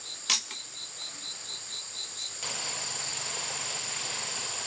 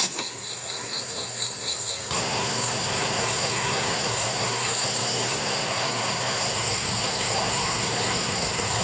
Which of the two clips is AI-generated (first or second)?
second